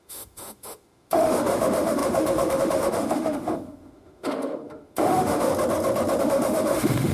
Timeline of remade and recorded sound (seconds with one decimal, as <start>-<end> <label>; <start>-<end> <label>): 0.0-5.5 remade; 5.5-6.2 recorded; 6.2-7.1 remade